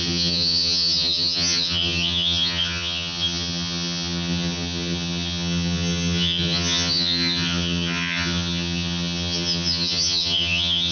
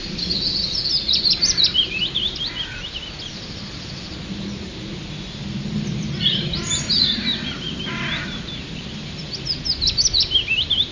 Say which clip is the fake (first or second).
first